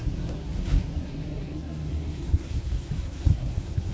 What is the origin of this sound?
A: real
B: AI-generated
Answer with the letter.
B